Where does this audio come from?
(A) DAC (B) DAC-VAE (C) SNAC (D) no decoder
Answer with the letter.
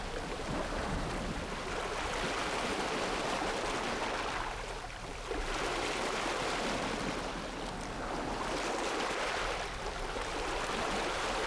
D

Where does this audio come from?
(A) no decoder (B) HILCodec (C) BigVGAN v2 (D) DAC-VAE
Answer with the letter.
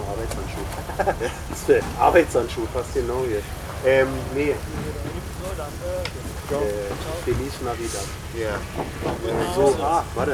A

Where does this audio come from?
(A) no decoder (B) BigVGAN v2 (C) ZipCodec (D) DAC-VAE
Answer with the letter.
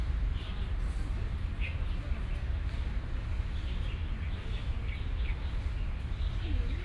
A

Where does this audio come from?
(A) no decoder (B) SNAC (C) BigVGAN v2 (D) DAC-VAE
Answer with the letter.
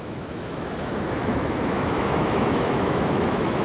D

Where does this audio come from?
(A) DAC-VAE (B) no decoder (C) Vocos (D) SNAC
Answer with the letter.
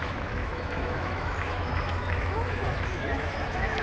A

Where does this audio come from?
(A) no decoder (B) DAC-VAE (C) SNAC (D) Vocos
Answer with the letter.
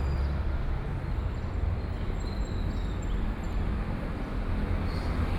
A